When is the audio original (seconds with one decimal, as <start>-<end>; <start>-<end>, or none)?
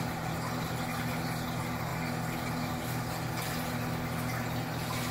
0.0-5.1